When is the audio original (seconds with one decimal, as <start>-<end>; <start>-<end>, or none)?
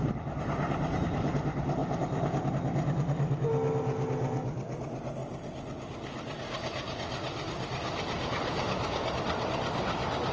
0.0-10.3